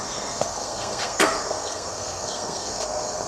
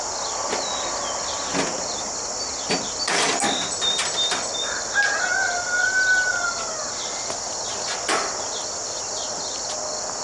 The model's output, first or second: first